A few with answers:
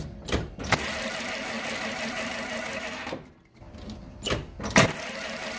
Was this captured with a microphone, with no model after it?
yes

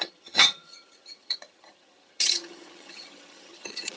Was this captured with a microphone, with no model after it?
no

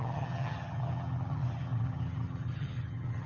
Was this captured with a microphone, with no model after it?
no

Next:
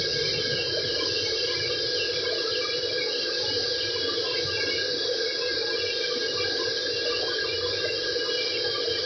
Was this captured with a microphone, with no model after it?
yes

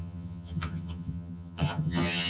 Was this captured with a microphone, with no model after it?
no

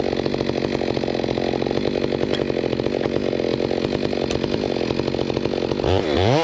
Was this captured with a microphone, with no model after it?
yes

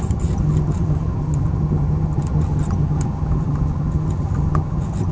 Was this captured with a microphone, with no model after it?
no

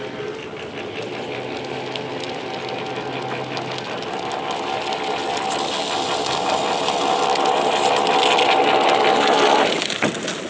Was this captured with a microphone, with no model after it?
yes